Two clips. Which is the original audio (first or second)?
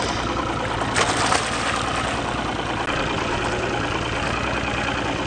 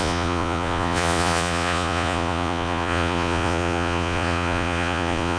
first